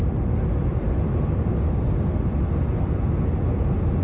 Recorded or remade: recorded